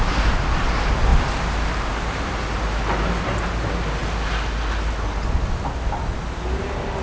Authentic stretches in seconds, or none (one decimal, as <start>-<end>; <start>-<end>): 0.0-7.0